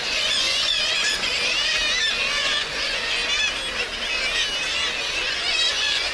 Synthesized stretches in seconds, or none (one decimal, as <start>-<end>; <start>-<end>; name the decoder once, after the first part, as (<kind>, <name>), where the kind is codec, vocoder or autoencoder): 0.0-1.3 (vocoder, Vocos); 2.1-3.2; 5.3-6.1